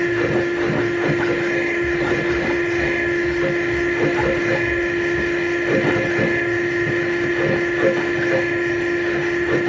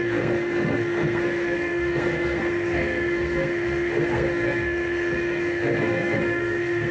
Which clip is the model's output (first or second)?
second